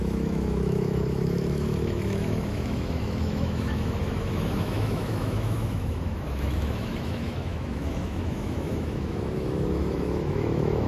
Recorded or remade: remade